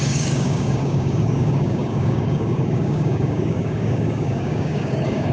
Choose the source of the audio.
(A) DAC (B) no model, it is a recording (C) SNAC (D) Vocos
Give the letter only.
A